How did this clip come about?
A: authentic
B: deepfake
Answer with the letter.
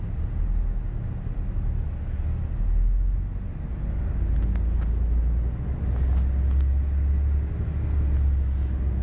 A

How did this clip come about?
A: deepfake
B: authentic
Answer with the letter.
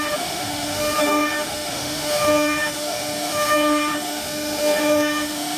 A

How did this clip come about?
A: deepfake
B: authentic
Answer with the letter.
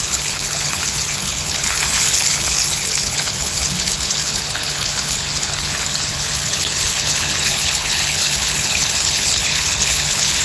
A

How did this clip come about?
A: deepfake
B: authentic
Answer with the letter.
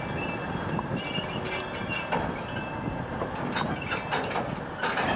B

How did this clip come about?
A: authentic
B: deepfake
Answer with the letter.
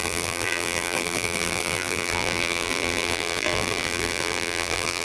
B